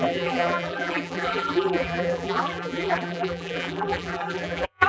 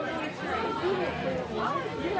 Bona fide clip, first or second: second